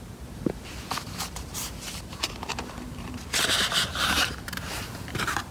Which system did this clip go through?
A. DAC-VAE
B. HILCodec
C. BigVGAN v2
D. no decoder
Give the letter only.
C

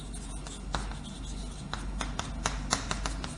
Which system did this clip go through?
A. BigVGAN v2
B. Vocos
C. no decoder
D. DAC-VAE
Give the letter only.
C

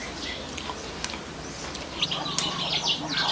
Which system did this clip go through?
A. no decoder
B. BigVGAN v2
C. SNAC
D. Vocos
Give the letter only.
A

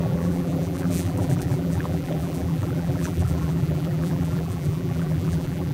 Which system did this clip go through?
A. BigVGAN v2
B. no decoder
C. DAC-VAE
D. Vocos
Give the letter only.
A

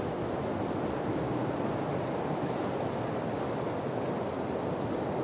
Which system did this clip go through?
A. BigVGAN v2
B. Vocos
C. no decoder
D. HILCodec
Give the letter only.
C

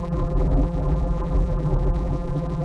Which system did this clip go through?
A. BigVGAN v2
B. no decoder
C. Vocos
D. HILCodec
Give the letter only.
A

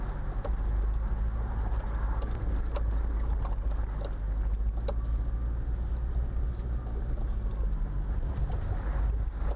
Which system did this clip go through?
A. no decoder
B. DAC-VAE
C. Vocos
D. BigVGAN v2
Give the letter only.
A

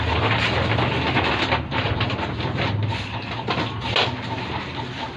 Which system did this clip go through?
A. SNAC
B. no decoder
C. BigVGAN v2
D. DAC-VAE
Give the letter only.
B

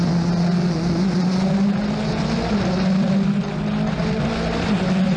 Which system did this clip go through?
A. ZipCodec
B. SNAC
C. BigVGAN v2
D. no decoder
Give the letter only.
D